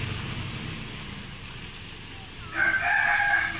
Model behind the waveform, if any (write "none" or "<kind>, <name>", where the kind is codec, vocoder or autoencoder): none